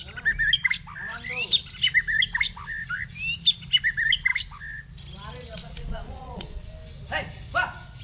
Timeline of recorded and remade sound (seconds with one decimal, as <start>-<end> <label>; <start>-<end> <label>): 0.0-5.6 recorded; 5.6-6.7 remade; 6.7-8.0 recorded